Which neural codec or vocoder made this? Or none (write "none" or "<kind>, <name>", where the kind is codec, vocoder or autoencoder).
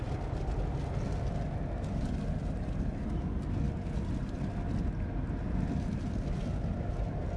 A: none